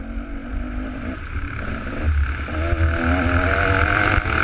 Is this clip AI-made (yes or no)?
no